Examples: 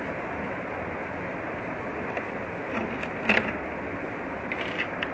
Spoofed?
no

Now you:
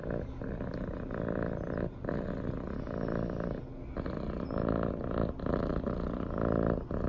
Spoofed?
no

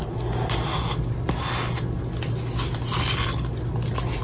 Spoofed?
no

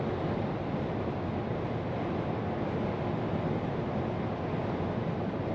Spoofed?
no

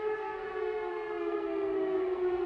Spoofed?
yes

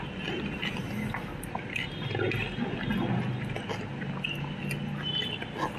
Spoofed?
no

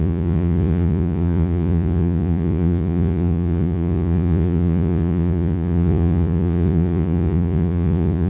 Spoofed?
yes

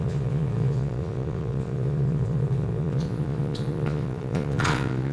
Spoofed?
yes